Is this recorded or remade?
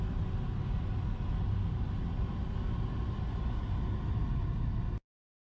recorded